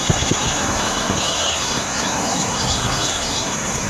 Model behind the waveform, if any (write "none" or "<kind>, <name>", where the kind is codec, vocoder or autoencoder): codec, SNAC